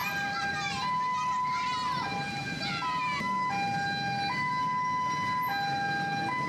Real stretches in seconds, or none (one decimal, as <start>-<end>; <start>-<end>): 0.5-2.1; 2.6-6.5